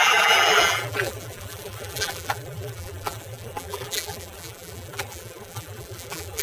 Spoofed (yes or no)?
yes